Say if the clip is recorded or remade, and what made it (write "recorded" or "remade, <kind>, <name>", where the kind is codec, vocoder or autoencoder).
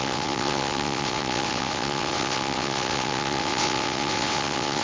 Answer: remade, vocoder, WaveNeXt